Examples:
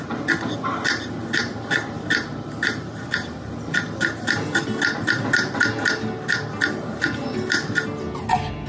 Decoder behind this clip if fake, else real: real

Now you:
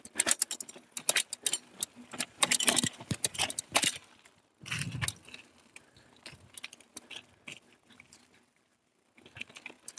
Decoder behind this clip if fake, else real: real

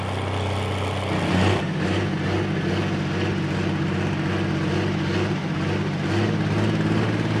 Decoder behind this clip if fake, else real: real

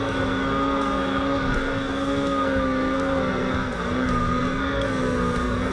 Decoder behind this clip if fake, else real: fake, codec, SNAC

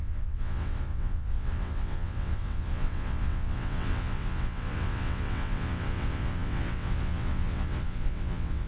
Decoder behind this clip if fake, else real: fake, vocoder, WaveNeXt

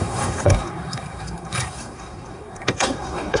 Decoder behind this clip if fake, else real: fake, codec, SNAC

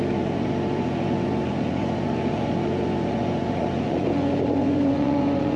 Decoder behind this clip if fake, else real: fake, vocoder, Vocos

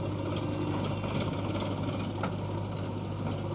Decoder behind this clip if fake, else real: real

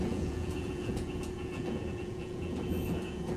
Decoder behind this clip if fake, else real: fake, vocoder, Vocos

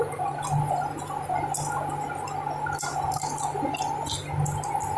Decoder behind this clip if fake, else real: real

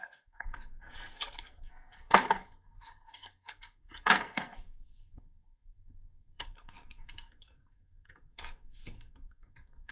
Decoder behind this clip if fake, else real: fake, codec, SNAC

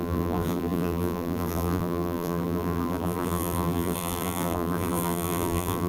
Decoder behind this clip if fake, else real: fake, vocoder, BigVGAN v2